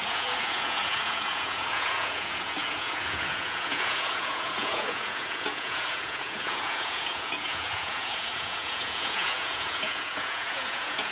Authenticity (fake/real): fake